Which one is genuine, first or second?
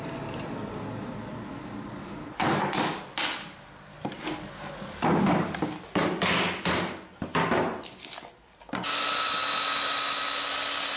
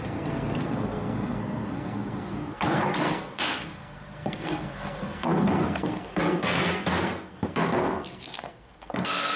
first